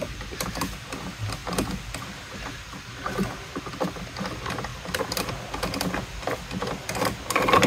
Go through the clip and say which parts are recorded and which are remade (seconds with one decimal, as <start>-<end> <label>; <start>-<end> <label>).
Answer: 0.0-4.7 recorded; 4.7-5.3 remade; 5.3-7.7 recorded